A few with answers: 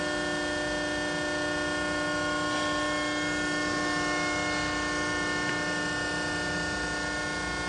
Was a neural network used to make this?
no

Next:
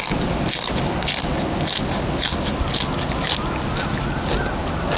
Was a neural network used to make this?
no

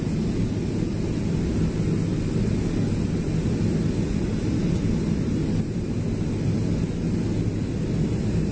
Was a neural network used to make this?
no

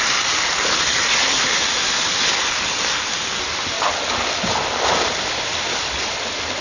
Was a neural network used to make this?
no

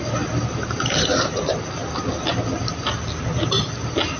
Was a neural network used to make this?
no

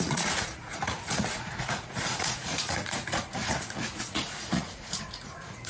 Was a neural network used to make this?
yes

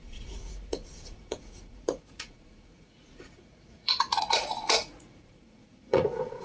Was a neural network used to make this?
yes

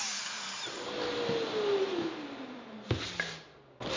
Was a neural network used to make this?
no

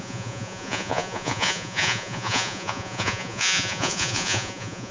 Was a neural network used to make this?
yes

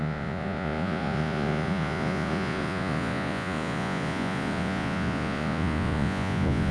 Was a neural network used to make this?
yes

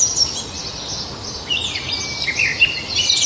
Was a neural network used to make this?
no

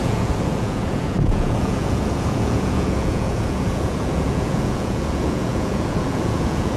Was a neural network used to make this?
yes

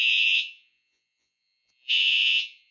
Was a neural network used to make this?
yes